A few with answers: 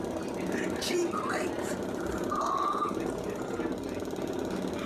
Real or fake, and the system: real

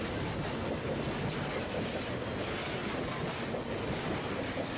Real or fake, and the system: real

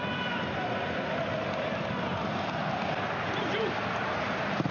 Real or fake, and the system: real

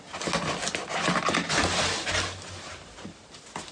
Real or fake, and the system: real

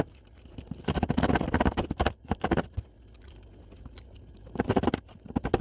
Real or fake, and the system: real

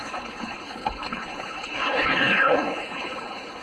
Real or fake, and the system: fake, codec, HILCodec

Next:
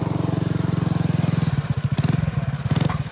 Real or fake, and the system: real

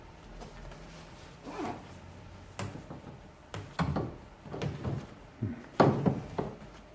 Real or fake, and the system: real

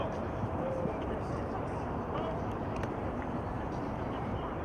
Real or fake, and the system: fake, vocoder, BigVGAN v2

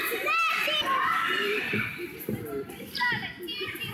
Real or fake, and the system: fake, vocoder, BigVGAN v2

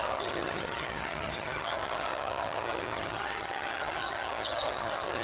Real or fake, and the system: fake, vocoder, HiFi-GAN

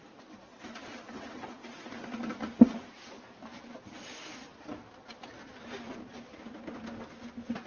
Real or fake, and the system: real